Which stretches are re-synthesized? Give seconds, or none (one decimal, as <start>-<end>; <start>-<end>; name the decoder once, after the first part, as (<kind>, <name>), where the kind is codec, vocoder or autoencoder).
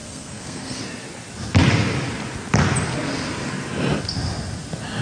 0.0-0.8 (codec, SNAC)